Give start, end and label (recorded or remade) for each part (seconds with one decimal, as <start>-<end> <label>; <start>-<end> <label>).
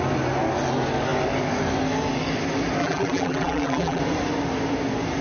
0.0-2.8 recorded; 2.8-4.0 remade; 4.0-5.2 recorded